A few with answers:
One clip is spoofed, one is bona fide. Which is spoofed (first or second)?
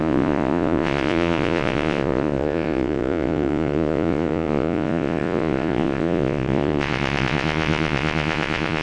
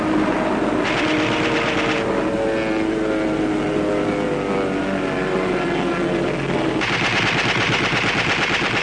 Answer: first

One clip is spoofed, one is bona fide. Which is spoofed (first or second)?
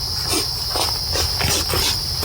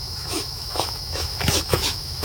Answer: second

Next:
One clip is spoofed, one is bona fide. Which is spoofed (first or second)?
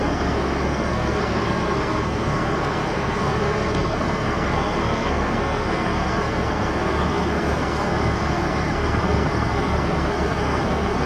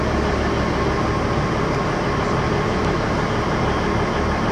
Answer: first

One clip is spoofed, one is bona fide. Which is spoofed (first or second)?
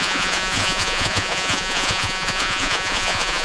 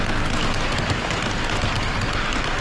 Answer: first